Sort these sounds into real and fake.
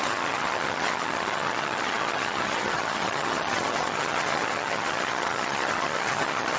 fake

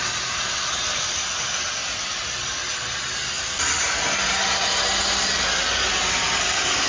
real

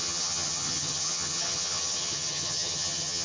fake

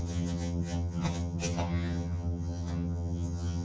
fake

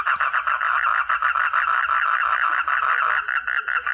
real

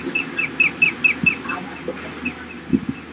real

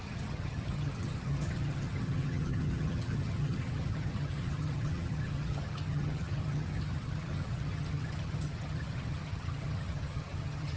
fake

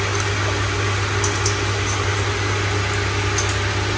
real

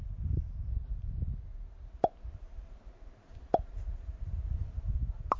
real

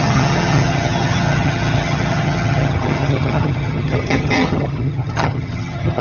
fake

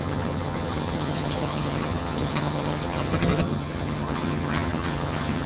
fake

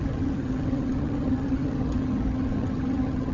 fake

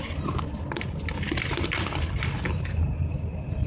real